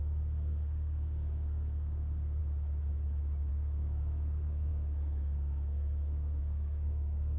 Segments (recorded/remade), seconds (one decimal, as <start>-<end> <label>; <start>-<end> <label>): 0.0-2.4 remade; 2.4-3.5 recorded; 3.5-7.4 remade